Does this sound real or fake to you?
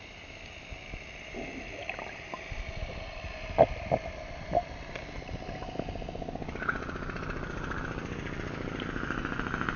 real